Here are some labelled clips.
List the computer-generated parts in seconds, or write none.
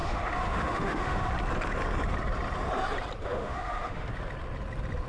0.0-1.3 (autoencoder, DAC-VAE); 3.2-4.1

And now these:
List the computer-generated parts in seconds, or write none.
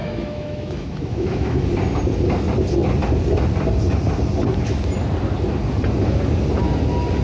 0.0-1.6 (autoencoder, DAC-VAE)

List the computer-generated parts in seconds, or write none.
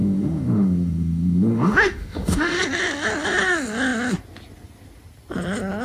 0.0-2.6 (autoencoder, DAC-VAE)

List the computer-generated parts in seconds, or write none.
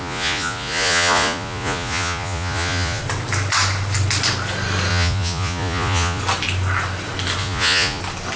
0.0-3.0 (vocoder, Vocos); 4.9-6.2; 7.4-8.0